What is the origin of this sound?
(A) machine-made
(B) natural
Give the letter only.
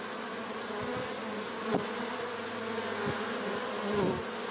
B